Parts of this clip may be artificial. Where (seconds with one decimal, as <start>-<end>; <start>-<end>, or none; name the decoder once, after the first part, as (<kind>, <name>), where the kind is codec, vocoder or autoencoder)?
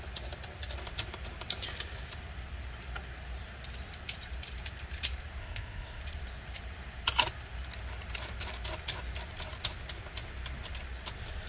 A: 5.4-6.0 (codec, ZipCodec)